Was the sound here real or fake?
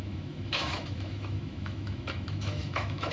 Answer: fake